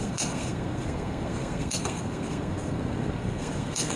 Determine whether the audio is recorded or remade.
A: remade